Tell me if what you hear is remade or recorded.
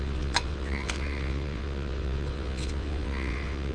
remade